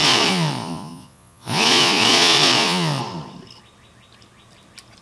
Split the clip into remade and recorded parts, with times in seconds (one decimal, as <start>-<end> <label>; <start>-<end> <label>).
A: 0.0-3.0 remade; 3.0-5.0 recorded